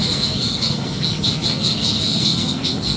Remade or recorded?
remade